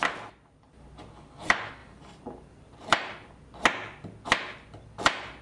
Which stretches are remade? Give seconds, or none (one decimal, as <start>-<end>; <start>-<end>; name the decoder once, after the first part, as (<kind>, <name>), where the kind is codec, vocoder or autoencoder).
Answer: 1.8-3.3 (vocoder, BigVGAN v2)

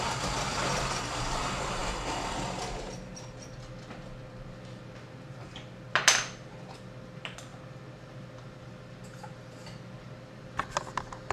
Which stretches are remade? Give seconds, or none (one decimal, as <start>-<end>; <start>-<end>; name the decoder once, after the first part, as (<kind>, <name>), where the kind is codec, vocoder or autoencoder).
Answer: none

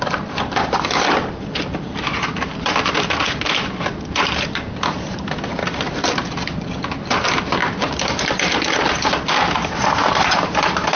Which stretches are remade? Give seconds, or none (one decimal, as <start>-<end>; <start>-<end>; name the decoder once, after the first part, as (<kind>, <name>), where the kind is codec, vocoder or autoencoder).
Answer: 2.5-4.0 (vocoder, BigVGAN v2)

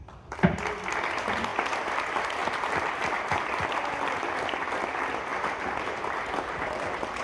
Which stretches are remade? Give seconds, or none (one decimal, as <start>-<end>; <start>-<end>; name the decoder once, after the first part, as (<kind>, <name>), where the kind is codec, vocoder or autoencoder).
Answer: 0.0-1.5 (vocoder, BigVGAN v2); 2.0-5.3; 5.8-7.2